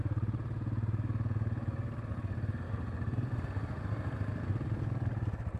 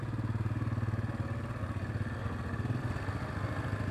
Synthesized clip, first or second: first